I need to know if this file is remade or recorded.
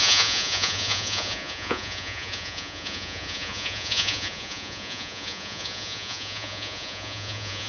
remade